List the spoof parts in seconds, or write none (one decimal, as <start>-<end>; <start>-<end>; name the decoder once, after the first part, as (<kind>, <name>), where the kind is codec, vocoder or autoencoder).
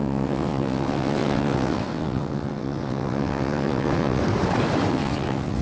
0.0-4.2 (vocoder, WaveNeXt); 4.9-5.6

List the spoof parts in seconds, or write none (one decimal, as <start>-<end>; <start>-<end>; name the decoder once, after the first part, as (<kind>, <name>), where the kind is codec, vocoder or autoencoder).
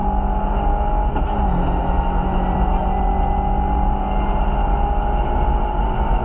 none